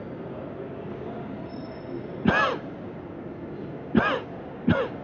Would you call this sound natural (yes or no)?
yes